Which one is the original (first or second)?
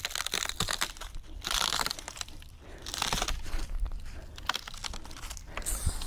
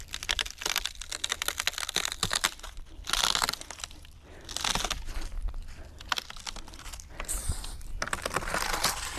second